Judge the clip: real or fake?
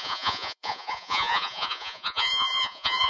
fake